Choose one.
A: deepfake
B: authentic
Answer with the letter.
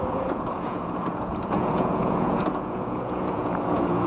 A